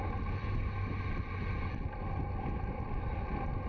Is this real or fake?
real